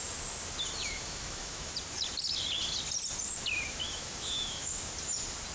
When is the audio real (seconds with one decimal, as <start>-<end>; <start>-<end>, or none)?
0.0-0.8; 1.7-3.8; 4.9-5.5